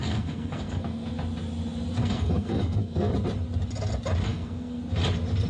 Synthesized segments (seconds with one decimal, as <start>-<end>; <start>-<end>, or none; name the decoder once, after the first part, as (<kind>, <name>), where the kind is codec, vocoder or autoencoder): 0.0-1.1 (codec, SNAC); 2.0-3.1; 4.3-4.8